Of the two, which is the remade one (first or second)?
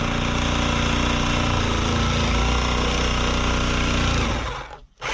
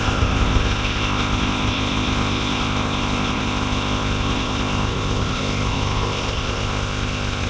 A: second